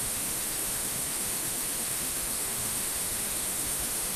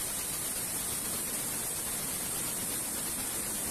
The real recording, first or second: second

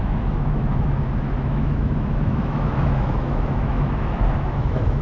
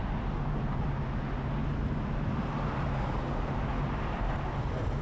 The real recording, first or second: second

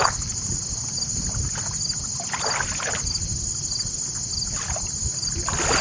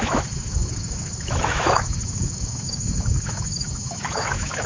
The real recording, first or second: first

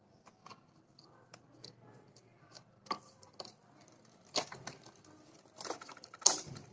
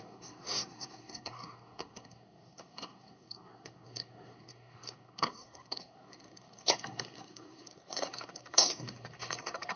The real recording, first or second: first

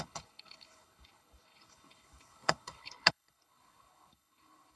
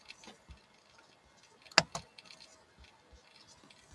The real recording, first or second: second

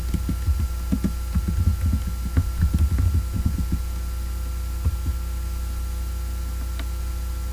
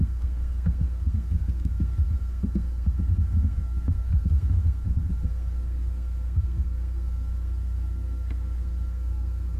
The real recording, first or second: first